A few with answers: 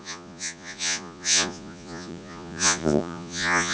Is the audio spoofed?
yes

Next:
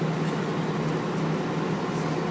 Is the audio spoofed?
no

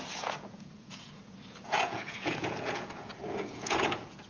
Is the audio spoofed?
yes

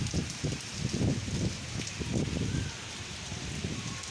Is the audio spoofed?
no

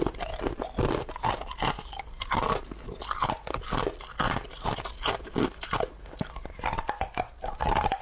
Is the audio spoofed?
no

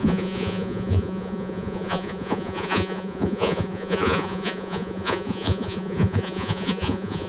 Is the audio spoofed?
yes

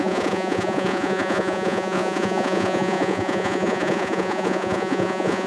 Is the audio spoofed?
yes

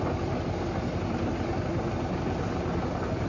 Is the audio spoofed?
no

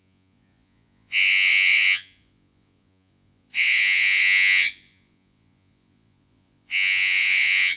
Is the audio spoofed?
yes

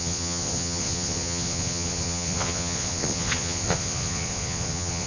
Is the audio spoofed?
yes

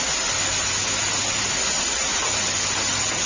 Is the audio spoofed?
no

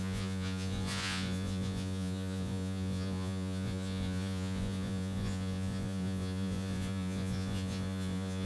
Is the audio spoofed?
yes